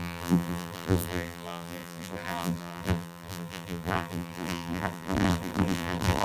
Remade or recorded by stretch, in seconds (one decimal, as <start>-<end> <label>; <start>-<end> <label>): 0.0-6.2 remade